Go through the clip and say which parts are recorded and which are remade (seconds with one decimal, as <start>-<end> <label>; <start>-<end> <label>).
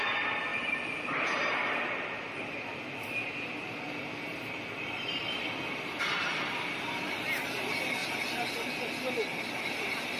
0.0-0.5 recorded; 0.5-2.4 remade; 2.4-4.3 recorded; 4.3-5.6 remade; 5.6-10.2 recorded